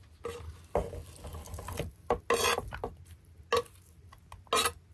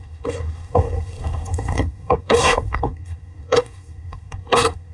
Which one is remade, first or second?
second